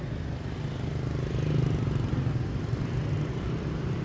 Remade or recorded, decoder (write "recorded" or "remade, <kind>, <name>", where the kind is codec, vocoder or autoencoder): recorded